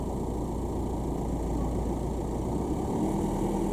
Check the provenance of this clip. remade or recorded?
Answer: recorded